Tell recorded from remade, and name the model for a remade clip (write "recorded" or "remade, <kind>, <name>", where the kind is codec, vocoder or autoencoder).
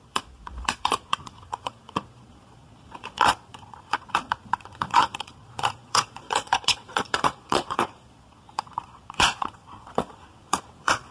remade, vocoder, Vocos